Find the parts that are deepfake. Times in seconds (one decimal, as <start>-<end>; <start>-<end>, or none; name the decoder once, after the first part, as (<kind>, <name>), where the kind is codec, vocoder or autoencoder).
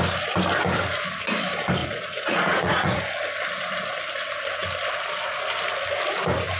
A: 1.8-3.0 (vocoder, Vocos)